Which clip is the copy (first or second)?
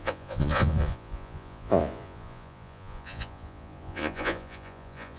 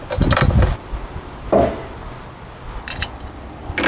first